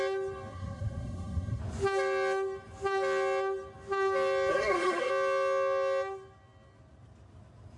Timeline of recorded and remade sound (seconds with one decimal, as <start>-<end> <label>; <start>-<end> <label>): 0.0-0.5 recorded; 0.5-1.6 remade; 1.6-4.5 recorded; 4.5-5.1 remade; 5.1-7.8 recorded